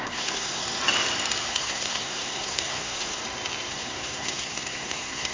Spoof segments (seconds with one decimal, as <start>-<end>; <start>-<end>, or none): 0.0-0.6; 1.5-3.2; 3.7-5.3